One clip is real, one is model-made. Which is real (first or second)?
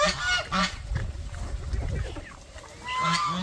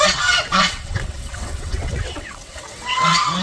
first